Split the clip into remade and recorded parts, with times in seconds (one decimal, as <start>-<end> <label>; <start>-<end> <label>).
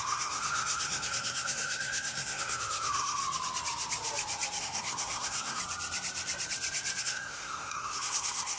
0.0-3.2 remade; 3.2-4.6 recorded; 4.6-5.6 remade; 5.6-7.0 recorded; 7.0-8.6 remade